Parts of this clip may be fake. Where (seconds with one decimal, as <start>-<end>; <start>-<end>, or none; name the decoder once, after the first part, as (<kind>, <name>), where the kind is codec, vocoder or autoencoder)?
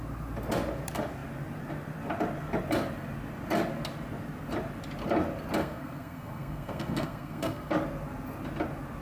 5.6-7.7 (codec, SNAC)